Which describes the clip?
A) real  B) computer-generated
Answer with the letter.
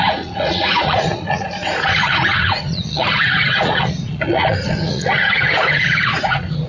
B